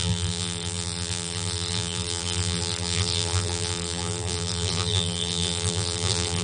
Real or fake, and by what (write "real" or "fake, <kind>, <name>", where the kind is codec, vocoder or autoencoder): fake, vocoder, BigVGAN v2